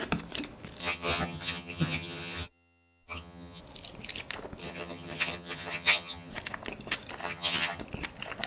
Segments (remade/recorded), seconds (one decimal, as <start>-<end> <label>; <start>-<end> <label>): 0.0-0.8 recorded; 0.8-3.6 remade; 3.6-4.6 recorded; 4.6-6.3 remade; 6.3-7.2 recorded; 7.2-7.8 remade; 7.8-8.5 recorded